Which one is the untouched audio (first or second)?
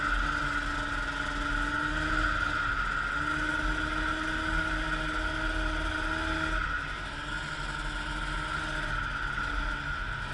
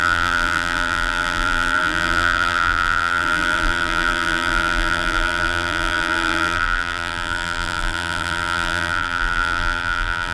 first